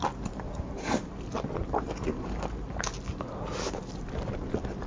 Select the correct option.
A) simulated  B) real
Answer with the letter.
B